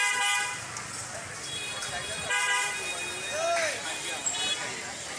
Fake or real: real